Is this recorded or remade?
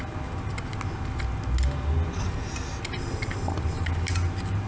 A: recorded